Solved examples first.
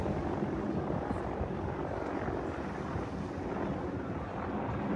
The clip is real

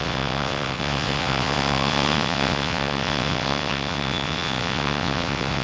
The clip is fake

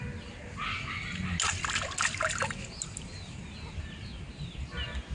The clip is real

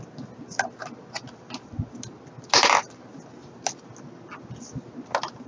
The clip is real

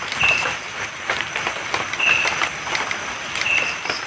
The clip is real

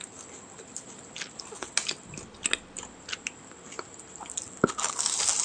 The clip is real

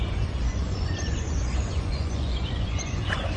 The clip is fake